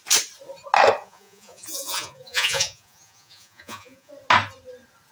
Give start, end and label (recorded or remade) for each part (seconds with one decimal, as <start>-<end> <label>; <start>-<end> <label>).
0.0-1.0 recorded; 1.0-4.1 remade; 4.1-5.1 recorded